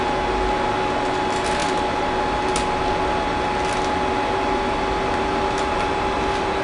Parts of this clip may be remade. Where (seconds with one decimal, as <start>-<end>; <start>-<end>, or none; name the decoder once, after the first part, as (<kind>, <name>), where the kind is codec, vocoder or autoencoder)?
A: none